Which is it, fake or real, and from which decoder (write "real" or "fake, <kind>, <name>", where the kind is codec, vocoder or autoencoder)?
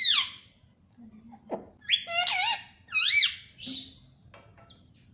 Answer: real